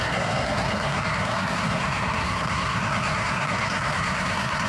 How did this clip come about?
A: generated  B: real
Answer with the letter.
A